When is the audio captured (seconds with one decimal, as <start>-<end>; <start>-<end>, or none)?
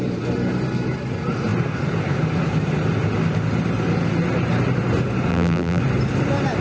0.0-5.3; 5.8-6.6